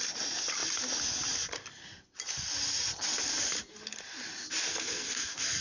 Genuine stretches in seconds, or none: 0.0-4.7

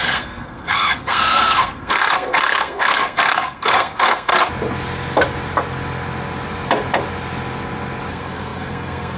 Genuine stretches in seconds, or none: 4.3-8.1